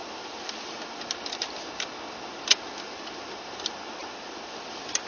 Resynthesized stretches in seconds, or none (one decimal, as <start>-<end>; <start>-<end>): none